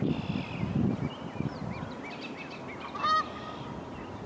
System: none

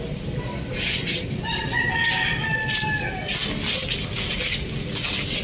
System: none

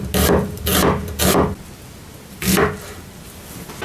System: none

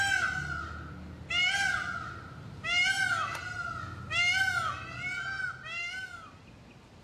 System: none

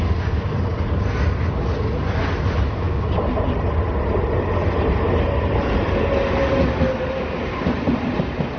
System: none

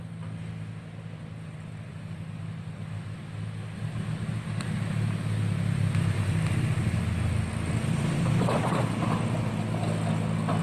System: none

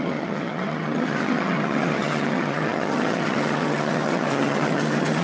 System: vocoder, HiFi-GAN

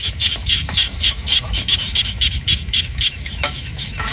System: autoencoder, DAC-VAE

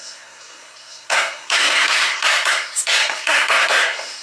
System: codec, SNAC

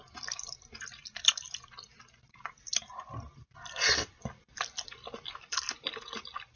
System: none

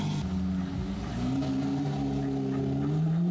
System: none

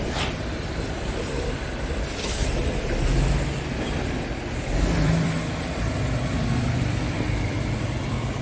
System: vocoder, BigVGAN v2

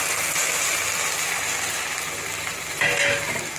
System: none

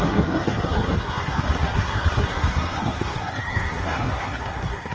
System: codec, SNAC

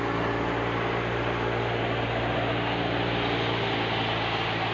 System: none